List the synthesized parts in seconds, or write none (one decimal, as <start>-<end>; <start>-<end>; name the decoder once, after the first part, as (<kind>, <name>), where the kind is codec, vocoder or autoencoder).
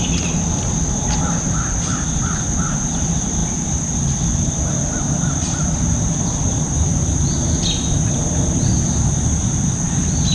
none